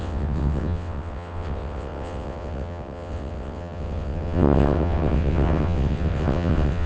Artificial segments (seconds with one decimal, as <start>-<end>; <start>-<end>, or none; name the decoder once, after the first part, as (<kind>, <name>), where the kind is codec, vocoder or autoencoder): 0.0-6.9 (vocoder, WaveNeXt)